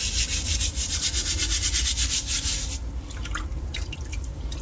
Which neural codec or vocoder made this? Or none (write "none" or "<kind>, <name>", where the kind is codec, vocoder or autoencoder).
vocoder, BigVGAN v2